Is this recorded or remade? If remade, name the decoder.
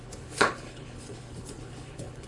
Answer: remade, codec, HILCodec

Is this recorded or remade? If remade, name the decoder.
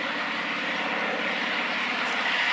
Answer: recorded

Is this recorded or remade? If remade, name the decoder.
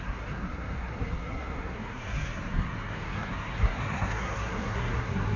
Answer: remade, codec, SNAC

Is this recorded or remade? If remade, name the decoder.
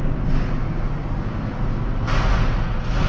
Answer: recorded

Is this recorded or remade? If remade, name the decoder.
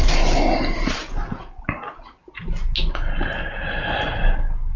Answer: recorded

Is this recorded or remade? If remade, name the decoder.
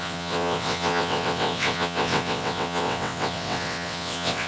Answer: remade, vocoder, WaveNeXt